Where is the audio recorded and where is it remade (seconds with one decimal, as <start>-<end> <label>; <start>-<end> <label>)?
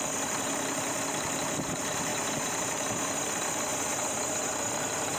0.0-2.1 remade; 2.1-2.6 recorded; 2.6-3.7 remade; 3.7-4.5 recorded; 4.5-5.2 remade